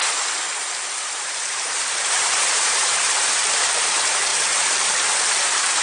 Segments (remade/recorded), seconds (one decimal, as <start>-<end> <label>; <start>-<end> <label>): 0.0-3.5 remade; 3.5-5.8 recorded